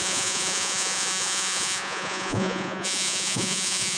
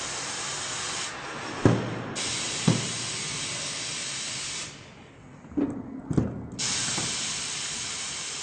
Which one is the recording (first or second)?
second